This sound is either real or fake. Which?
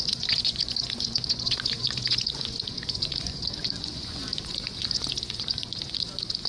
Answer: fake